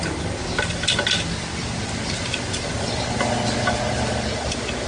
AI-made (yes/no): no